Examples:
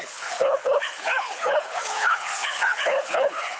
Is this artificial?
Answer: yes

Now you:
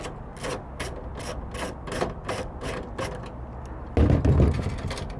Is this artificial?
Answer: no